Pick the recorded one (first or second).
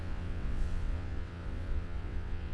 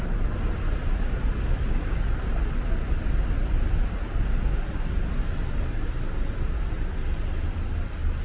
second